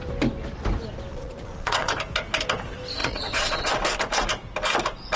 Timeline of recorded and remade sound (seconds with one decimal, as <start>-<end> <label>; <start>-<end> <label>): 0.0-1.1 recorded; 1.1-1.9 remade; 1.9-3.0 recorded; 3.0-3.7 remade; 3.7-5.2 recorded